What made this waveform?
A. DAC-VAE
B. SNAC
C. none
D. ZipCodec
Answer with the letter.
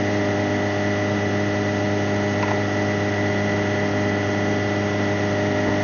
C